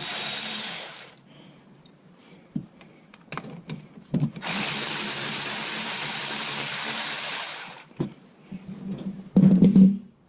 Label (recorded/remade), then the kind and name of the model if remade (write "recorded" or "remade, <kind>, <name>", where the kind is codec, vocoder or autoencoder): remade, vocoder, BigVGAN v2